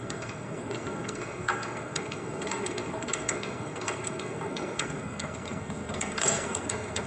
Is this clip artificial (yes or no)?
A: yes